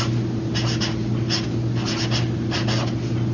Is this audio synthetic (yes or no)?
no